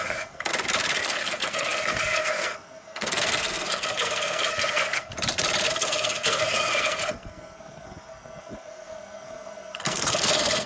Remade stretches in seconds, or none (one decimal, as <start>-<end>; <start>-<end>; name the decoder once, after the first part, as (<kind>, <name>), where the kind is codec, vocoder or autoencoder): 0.0-0.5 (codec, SNAC); 1.0-5.1; 5.7-10.7